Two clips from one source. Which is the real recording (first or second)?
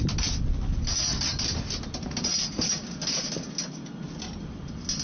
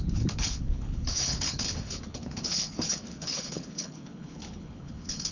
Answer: first